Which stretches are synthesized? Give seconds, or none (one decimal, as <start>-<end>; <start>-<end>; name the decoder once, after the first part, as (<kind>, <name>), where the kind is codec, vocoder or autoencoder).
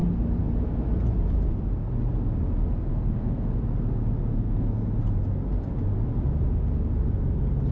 2.9-3.6 (codec, SNAC); 4.3-4.9